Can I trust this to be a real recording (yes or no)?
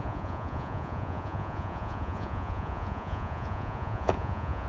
no